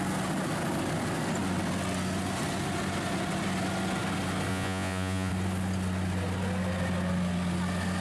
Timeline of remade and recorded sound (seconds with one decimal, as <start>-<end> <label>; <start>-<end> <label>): 0.0-4.5 recorded; 4.5-5.3 remade; 5.3-8.0 recorded